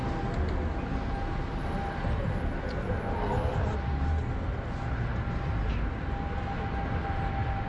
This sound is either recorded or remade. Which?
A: recorded